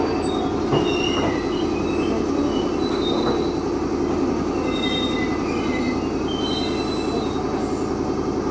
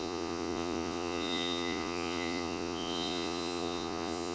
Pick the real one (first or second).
first